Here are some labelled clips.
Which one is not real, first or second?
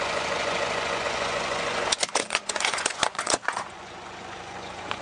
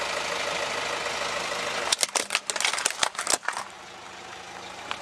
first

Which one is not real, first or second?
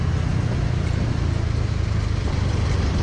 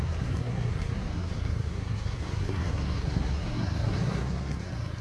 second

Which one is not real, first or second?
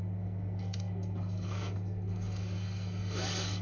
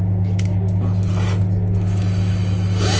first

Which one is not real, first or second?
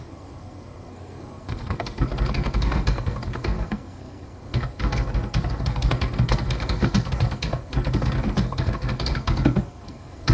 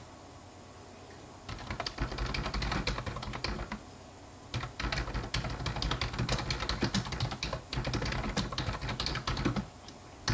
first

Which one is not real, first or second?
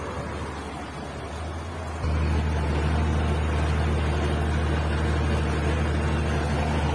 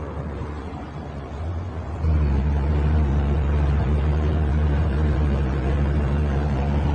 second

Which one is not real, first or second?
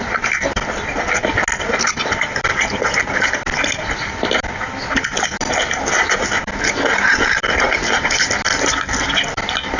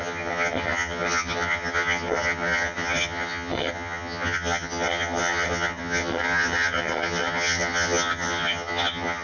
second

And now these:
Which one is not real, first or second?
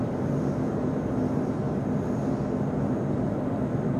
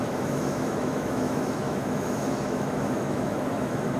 second